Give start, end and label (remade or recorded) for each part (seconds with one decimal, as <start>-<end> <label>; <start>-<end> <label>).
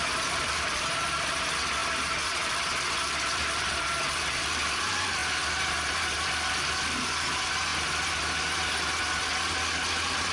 0.0-5.2 remade; 5.2-5.9 recorded; 5.9-7.7 remade; 7.7-10.3 recorded